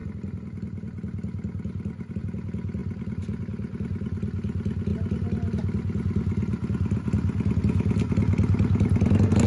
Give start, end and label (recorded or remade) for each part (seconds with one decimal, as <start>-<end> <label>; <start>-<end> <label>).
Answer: 0.0-9.5 recorded